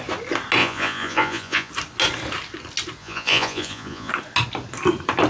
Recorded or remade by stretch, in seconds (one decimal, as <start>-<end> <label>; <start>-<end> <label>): 0.0-0.6 recorded; 0.6-1.7 remade; 1.7-3.0 recorded; 3.0-4.1 remade; 4.1-5.3 recorded